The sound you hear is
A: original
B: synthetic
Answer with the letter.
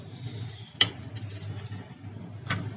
A